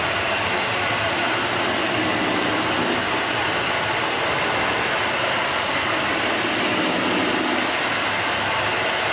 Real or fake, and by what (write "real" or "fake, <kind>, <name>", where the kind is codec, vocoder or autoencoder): real